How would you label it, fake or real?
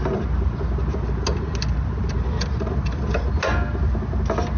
real